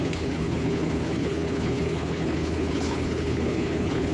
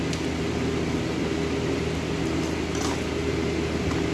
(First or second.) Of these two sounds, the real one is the second